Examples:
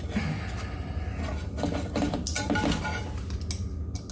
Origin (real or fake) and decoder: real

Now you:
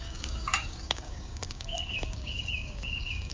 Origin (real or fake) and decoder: fake, codec, DAC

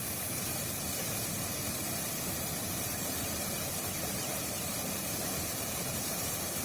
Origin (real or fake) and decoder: fake, vocoder, BigVGAN v2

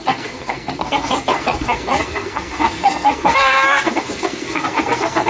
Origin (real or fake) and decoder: fake, codec, SNAC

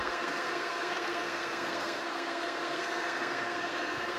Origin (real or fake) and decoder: fake, codec, SNAC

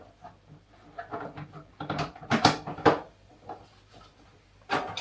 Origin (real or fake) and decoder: real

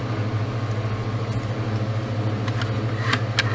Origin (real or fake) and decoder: real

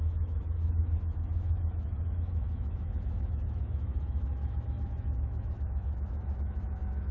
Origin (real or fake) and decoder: fake, autoencoder, DAC-VAE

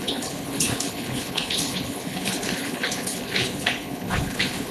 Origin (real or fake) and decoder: fake, codec, HILCodec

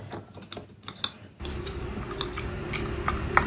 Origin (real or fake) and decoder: real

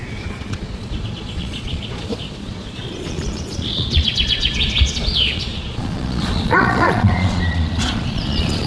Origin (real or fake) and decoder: fake, vocoder, Vocos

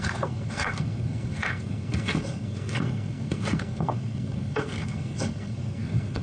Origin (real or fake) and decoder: fake, codec, SNAC